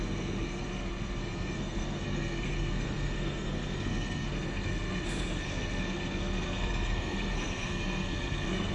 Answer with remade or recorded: remade